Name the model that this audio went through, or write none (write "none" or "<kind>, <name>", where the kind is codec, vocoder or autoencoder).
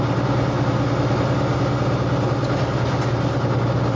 none